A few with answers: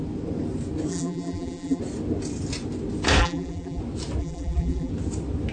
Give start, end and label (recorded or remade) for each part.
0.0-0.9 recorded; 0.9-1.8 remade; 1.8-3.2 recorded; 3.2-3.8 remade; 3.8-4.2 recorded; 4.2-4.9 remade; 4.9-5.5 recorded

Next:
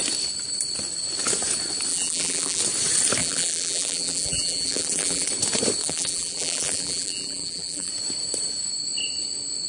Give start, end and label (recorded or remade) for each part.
0.0-1.9 recorded; 1.9-2.6 remade; 2.6-3.2 recorded; 3.2-5.3 remade; 5.3-5.8 recorded; 5.8-7.9 remade; 7.9-9.7 recorded

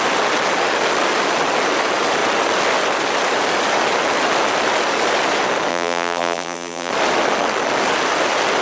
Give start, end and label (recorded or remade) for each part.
0.0-5.7 recorded; 5.7-6.9 remade; 6.9-8.6 recorded

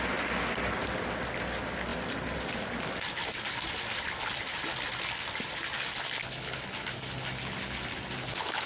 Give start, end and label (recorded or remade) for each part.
0.0-1.9 recorded; 1.9-3.7 remade; 3.7-8.7 recorded

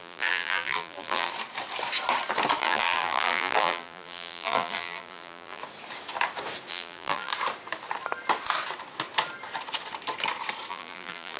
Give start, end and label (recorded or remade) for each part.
0.0-1.3 remade; 1.3-2.6 recorded; 2.6-5.6 remade; 5.6-6.7 recorded; 6.7-7.3 remade; 7.3-10.7 recorded; 10.7-11.4 remade

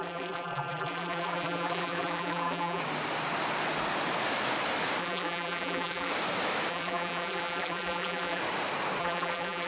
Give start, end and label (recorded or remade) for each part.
0.0-2.8 remade; 2.8-5.0 recorded; 5.0-6.1 remade; 6.1-6.7 recorded; 6.7-8.4 remade; 8.4-9.0 recorded; 9.0-9.7 remade

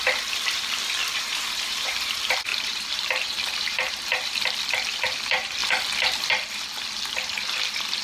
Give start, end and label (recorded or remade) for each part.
0.0-1.0 recorded; 1.0-1.9 remade; 1.9-2.5 recorded; 2.5-4.5 remade; 4.5-8.0 recorded

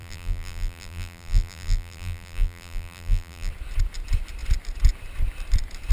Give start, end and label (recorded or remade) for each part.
0.0-3.5 remade; 3.5-5.9 recorded